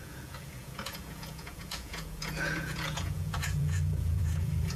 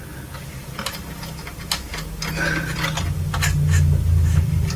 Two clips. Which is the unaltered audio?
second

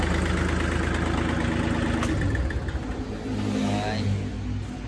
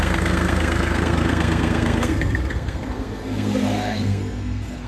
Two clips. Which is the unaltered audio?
first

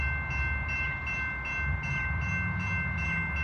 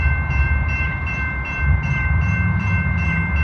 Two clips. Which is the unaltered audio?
first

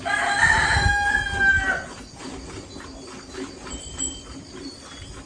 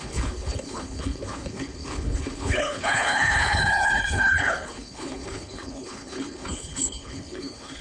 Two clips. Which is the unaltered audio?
first